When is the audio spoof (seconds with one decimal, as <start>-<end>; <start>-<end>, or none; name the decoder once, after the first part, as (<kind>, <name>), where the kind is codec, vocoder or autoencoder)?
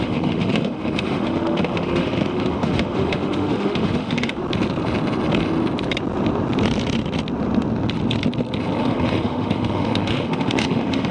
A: 0.0-4.4 (autoencoder, DAC-VAE); 8.8-11.1